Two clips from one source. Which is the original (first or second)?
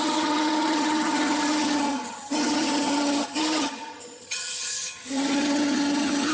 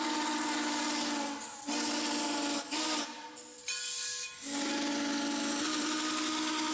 second